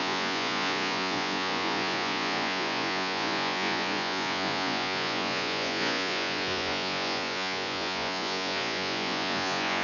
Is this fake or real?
fake